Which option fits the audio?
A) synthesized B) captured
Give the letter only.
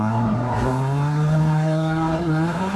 A